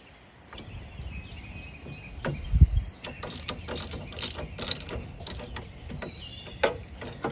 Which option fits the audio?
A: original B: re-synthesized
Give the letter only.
A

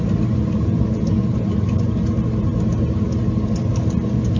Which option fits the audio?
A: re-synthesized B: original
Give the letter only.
B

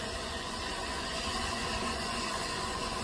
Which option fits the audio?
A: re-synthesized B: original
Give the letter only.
A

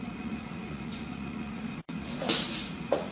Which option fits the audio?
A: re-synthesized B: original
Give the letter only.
A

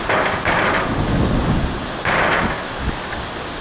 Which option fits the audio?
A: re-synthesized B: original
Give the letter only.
B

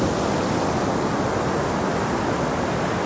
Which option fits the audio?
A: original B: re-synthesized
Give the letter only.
A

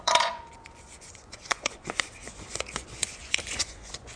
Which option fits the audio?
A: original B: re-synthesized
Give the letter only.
B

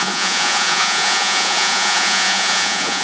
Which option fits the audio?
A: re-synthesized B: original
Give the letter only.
A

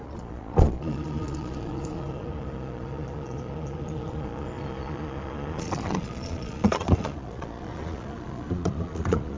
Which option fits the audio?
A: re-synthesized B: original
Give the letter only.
A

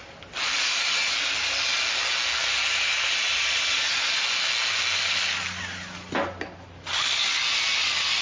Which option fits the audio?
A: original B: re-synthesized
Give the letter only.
A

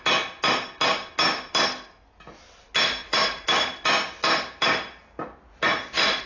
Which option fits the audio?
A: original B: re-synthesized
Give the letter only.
A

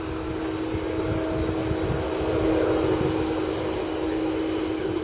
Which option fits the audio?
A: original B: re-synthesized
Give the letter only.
A